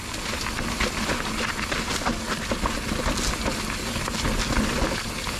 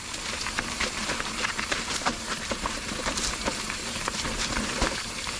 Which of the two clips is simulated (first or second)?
second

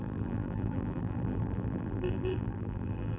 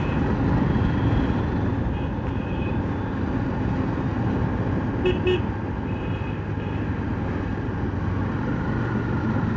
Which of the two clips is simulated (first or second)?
first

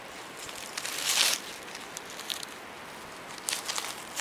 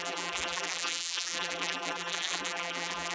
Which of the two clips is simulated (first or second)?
second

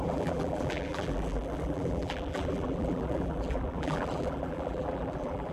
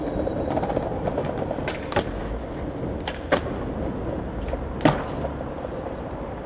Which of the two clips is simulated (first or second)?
first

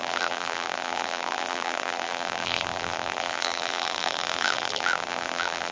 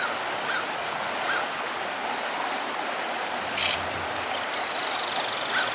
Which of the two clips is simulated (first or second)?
first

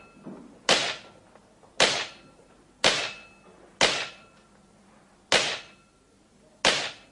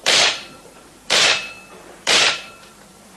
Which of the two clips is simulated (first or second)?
second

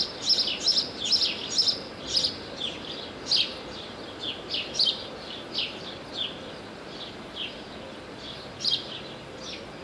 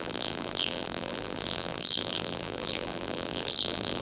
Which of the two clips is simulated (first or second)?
second